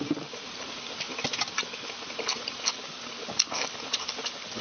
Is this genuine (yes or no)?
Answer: yes